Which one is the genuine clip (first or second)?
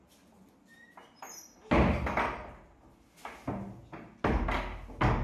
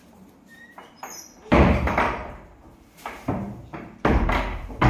first